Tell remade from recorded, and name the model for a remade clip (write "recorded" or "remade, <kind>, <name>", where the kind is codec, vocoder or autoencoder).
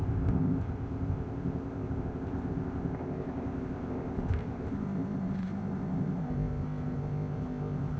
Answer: remade, codec, ZipCodec